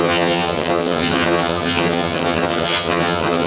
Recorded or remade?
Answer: remade